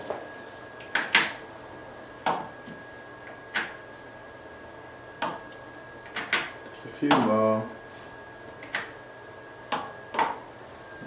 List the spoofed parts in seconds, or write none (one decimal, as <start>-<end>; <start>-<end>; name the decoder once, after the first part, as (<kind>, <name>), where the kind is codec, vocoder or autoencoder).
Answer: none